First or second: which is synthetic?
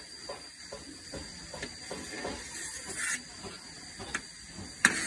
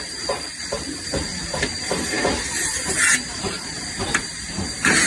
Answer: second